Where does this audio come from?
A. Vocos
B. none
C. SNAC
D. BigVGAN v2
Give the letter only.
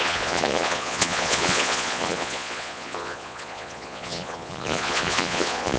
A